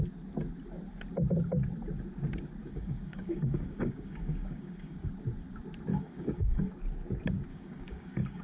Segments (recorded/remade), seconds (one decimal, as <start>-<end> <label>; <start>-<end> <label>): 0.0-2.6 recorded; 2.6-5.1 remade; 5.1-5.9 recorded; 5.9-6.7 remade; 6.7-7.5 recorded; 7.5-8.4 remade